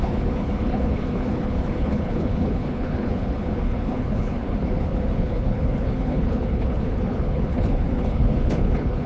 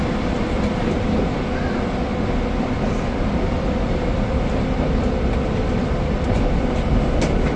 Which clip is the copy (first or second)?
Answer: first